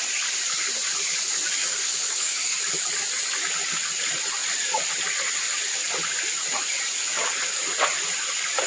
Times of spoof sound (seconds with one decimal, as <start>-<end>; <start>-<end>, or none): 1.7-2.6